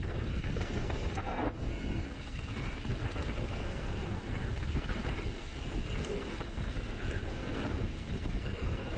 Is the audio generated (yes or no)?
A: yes